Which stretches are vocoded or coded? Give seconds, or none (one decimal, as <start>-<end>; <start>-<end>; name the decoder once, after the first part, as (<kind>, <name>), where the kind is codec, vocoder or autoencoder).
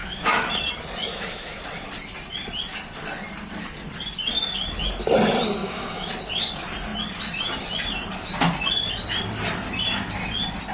0.0-0.7 (autoencoder, DAC-VAE); 1.1-1.6; 5.6-6.1